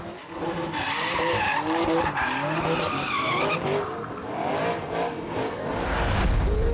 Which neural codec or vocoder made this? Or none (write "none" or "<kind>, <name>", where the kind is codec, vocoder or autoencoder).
none